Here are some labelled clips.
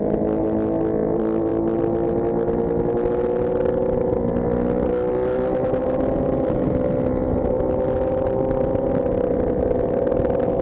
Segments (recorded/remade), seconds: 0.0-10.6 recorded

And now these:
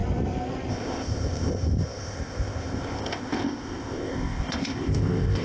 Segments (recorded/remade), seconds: 0.0-0.7 recorded; 0.7-5.4 remade

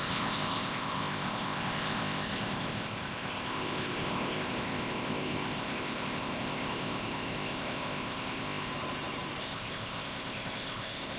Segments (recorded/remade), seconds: 0.0-8.7 remade; 8.7-9.4 recorded; 9.4-11.2 remade

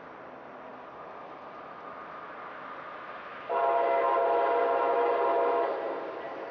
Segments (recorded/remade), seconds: 0.0-6.5 recorded

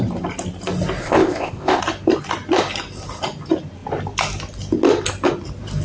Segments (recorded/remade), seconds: 0.0-1.0 recorded; 1.0-1.8 remade; 1.8-5.8 recorded